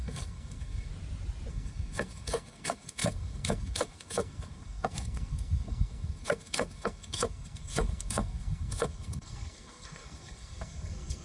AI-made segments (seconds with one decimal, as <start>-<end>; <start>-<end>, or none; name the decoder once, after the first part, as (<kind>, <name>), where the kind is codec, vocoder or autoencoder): 0.0-0.9 (codec, SNAC); 1.5-11.2

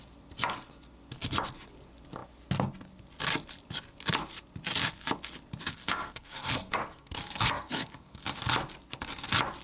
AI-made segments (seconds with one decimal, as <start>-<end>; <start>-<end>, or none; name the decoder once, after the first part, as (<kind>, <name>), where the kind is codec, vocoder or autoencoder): 5.7-8.2 (codec, SNAC)